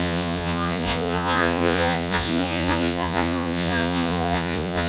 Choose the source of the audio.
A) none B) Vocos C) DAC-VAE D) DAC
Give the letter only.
B